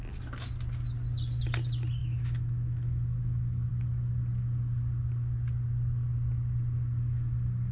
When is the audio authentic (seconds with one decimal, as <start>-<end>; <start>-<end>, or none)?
0.0-2.0; 3.7-7.7